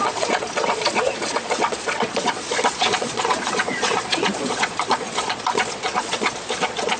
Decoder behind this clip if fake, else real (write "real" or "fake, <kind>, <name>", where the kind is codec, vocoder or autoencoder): fake, vocoder, Vocos